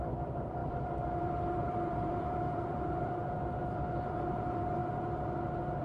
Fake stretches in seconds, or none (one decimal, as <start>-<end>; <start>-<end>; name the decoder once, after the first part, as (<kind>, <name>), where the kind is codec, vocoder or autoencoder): 0.0-4.8 (vocoder, BigVGAN v2)